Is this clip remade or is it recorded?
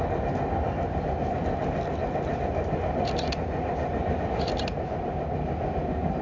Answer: recorded